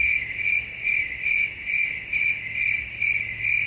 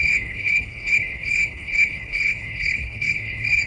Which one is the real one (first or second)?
first